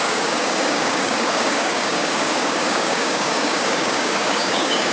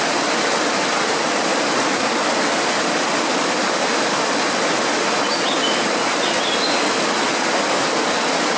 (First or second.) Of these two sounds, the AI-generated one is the first